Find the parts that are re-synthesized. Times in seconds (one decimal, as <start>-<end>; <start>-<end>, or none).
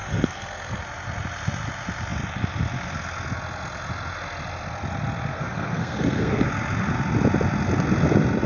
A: 0.0-0.8; 5.3-6.5